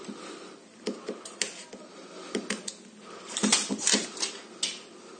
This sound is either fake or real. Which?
real